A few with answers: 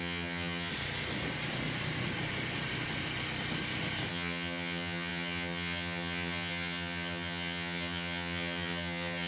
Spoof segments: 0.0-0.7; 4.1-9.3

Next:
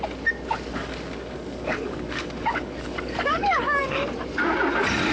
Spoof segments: 0.7-3.8

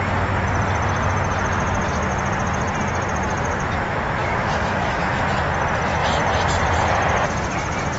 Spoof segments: 4.2-5.1

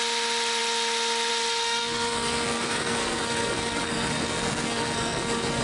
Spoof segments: 1.8-5.6

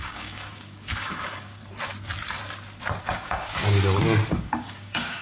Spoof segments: 0.0-1.6; 3.0-3.6; 4.3-5.2

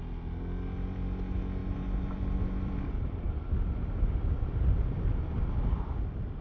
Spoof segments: 1.6-3.5

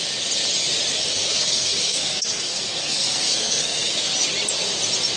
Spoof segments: 0.9-4.0